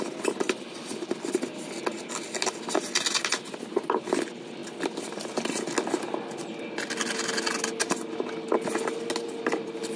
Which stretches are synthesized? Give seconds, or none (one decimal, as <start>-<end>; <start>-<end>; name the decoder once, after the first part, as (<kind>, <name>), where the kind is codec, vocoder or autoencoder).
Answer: none